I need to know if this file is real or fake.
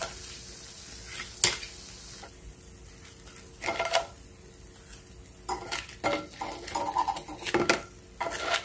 real